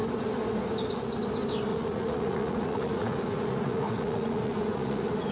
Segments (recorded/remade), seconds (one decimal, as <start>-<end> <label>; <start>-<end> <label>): 0.0-1.7 recorded; 1.7-5.3 remade